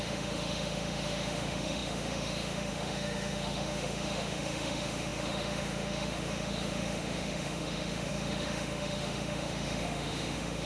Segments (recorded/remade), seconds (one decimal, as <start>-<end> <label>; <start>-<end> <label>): 0.0-10.7 remade